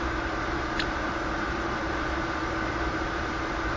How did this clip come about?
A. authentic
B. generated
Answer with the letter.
B